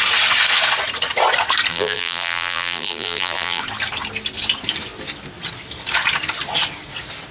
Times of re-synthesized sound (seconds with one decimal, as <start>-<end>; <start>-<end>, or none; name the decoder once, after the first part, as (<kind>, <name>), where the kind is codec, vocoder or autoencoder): 1.7-3.6 (vocoder, BigVGAN v2)